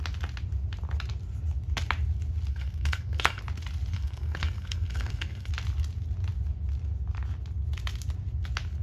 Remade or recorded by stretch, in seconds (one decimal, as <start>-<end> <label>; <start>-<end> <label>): 0.0-2.5 recorded; 2.5-3.4 remade; 3.4-3.9 recorded; 3.9-5.5 remade; 5.5-8.8 recorded